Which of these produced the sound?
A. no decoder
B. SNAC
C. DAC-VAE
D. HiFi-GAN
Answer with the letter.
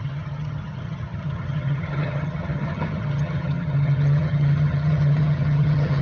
D